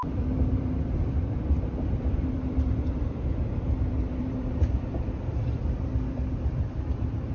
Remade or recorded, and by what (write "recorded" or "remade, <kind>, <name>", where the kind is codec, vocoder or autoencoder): remade, vocoder, BigVGAN v2